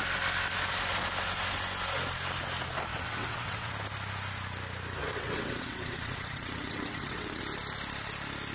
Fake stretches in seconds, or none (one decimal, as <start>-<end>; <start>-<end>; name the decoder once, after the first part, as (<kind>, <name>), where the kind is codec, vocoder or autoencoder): 2.9-3.7 (vocoder, WaveNeXt); 5.0-7.4